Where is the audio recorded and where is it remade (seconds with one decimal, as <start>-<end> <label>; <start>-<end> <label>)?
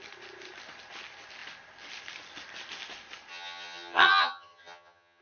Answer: 0.0-3.3 recorded; 3.3-5.2 remade